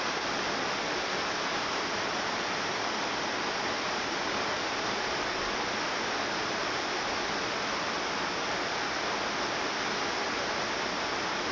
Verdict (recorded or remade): recorded